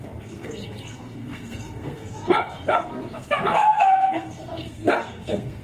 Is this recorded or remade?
remade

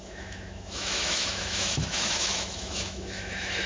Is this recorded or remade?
remade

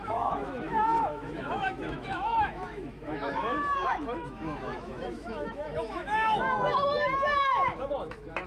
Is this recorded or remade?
remade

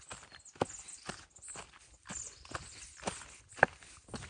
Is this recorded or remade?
recorded